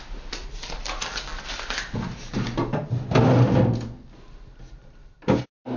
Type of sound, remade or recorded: recorded